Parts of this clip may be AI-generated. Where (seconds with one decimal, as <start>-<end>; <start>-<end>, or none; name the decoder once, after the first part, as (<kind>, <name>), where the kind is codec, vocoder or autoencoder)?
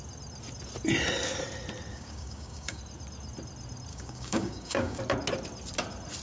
1.9-2.8 (codec, DAC); 3.9-5.0